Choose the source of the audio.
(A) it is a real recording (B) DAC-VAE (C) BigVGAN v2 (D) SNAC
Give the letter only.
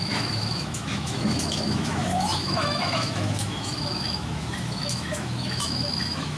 B